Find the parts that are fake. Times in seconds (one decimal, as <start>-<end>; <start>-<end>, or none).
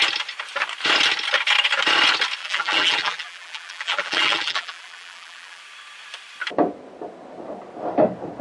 2.4-5.6